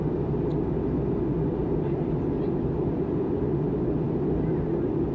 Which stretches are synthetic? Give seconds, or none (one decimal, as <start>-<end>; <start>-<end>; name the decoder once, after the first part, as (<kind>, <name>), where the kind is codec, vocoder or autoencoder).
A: none